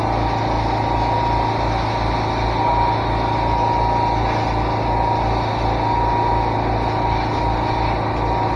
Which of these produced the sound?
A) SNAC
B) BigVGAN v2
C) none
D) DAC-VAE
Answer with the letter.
C